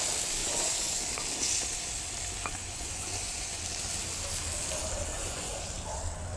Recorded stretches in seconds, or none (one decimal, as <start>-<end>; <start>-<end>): 0.0-0.4; 1.0-2.6; 3.6-5.1; 5.6-6.4